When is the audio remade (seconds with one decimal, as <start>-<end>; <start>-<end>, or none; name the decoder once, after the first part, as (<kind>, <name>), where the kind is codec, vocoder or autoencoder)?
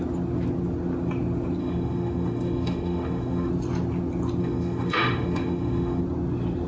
1.6-3.5 (autoencoder, DAC-VAE); 4.4-6.0